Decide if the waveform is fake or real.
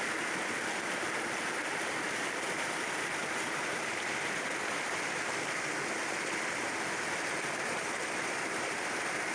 real